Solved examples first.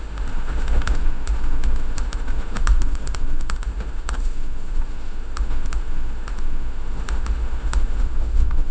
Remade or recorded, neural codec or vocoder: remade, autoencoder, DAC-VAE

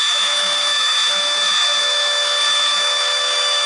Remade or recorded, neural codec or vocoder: remade, autoencoder, DAC-VAE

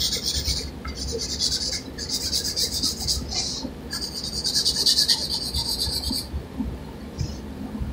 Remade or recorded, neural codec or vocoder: recorded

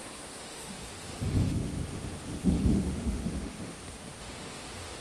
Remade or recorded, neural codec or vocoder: remade, autoencoder, DAC-VAE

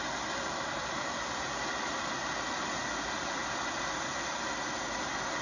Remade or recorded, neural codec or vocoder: recorded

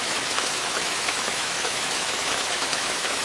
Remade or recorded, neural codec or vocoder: remade, autoencoder, DAC-VAE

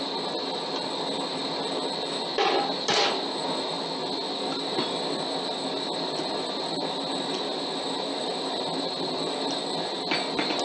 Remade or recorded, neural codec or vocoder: recorded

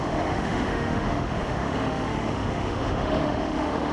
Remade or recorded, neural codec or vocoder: remade, autoencoder, DAC-VAE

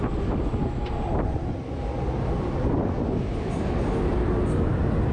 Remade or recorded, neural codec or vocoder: recorded